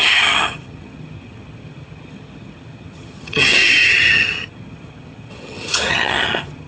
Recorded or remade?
remade